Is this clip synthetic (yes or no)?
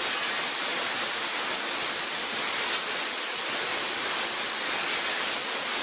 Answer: no